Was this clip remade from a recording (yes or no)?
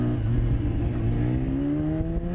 no